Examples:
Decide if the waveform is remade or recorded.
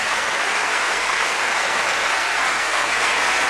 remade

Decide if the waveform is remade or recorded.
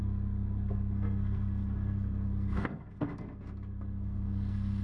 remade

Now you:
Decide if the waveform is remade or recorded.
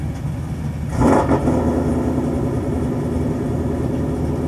recorded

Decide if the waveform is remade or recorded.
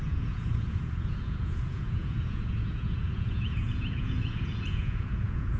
remade